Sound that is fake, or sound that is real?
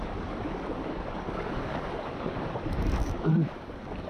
fake